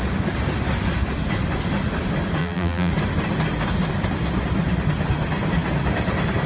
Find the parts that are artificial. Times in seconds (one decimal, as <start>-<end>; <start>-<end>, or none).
2.4-2.9